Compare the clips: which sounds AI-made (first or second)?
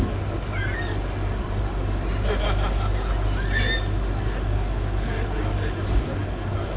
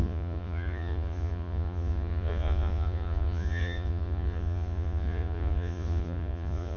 second